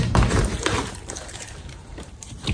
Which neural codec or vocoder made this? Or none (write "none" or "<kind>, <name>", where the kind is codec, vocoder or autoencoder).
vocoder, BigVGAN v2